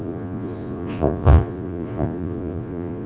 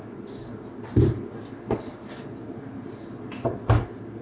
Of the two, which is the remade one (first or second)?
first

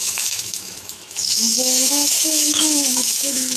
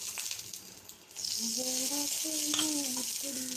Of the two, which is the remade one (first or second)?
first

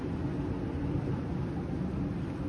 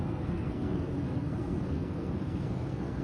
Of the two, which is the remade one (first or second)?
second